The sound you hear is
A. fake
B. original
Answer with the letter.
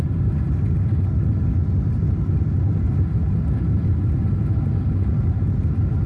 B